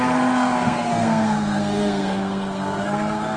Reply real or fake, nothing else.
fake